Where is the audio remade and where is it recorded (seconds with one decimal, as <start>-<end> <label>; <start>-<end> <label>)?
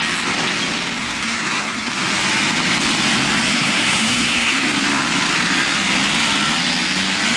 0.0-1.0 recorded; 1.0-1.9 remade; 1.9-3.5 recorded; 3.5-4.6 remade; 4.6-7.4 recorded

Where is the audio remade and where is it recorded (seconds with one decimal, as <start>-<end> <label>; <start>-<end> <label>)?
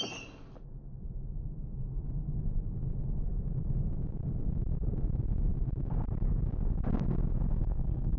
0.0-7.6 recorded; 7.6-8.2 remade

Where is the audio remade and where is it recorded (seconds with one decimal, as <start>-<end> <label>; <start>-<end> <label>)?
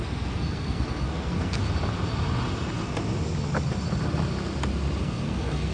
0.0-1.6 remade; 1.6-5.0 recorded; 5.0-5.7 remade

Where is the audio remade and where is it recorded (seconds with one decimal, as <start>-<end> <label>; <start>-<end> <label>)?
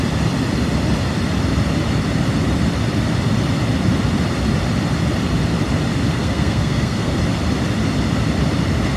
0.0-6.1 recorded; 6.1-7.2 remade; 7.2-9.0 recorded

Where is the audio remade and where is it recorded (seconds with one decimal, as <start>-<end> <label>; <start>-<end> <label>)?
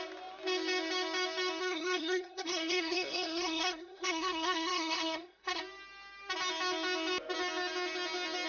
0.0-1.6 recorded; 1.6-5.6 remade; 5.6-8.5 recorded